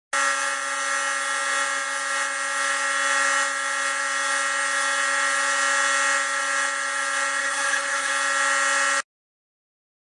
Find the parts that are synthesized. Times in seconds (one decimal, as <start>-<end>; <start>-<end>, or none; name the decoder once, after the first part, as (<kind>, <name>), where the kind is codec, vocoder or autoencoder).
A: 7.4-8.1 (codec, HILCodec)